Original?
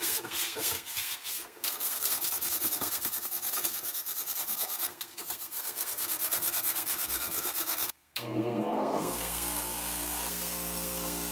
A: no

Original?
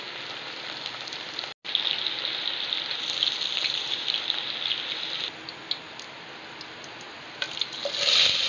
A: yes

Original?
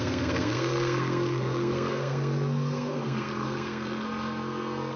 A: no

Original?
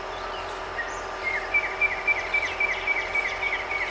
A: yes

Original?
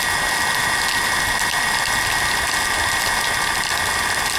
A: yes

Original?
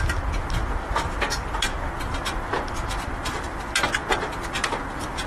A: yes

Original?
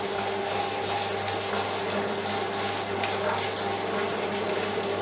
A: yes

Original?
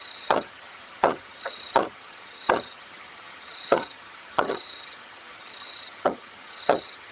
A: no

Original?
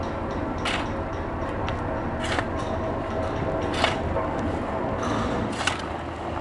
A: yes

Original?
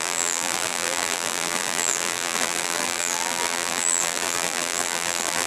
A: no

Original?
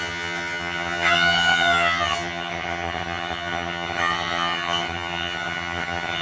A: no